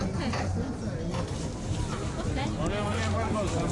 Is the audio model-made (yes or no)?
no